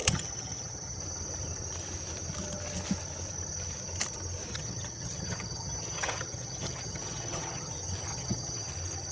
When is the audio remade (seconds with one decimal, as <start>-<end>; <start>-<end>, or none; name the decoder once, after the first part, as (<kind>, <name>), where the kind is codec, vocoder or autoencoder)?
0.0-1.0 (vocoder, HiFi-GAN); 4.5-7.7; 8.1-8.7